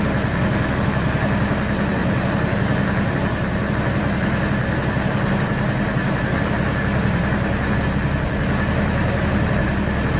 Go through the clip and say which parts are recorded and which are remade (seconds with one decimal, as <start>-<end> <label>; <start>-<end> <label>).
0.0-10.2 recorded